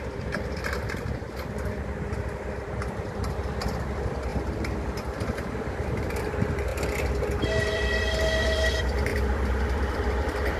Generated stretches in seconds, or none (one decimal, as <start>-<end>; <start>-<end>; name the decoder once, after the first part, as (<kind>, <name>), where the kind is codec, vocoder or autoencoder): 0.0-6.7 (vocoder, BigVGAN v2); 7.7-10.6